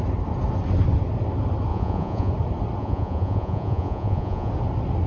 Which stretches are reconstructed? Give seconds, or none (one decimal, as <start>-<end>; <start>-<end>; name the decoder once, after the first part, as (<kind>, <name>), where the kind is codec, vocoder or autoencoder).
1.7-2.3 (vocoder, Vocos); 2.8-4.5